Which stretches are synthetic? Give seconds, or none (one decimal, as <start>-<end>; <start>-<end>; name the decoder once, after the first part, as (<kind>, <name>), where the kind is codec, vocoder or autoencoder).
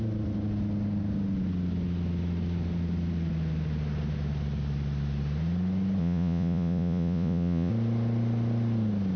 6.0-7.7 (vocoder, Vocos)